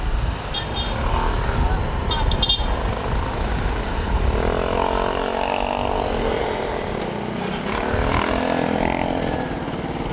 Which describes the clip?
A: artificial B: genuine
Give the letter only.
B